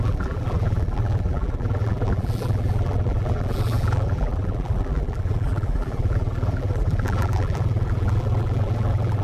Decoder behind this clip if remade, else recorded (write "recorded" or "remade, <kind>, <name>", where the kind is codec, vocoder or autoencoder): remade, vocoder, BigVGAN v2